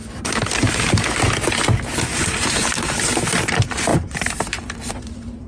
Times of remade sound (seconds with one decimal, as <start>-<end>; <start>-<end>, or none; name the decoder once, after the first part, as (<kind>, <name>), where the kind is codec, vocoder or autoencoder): 0.0-1.0 (vocoder, BigVGAN v2); 2.1-3.1; 3.9-4.9

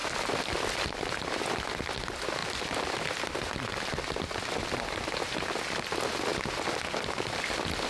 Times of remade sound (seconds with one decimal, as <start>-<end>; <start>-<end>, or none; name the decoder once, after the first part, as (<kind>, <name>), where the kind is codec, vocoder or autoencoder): 0.0-1.5 (vocoder, BigVGAN v2)

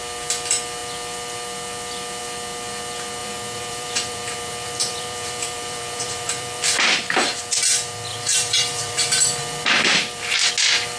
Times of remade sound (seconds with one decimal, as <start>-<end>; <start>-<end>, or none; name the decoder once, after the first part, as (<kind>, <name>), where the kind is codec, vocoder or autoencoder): 3.2-7.4 (vocoder, BigVGAN v2); 8.1-10.5

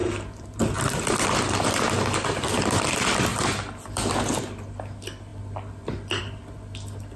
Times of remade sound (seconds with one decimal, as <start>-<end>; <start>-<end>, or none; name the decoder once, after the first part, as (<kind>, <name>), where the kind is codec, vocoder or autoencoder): 0.0-1.9 (vocoder, BigVGAN v2); 3.3-4.1

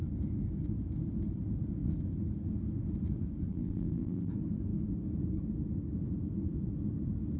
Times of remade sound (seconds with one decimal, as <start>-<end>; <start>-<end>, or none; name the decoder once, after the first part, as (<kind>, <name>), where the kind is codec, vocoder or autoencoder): 3.5-4.3 (vocoder, BigVGAN v2)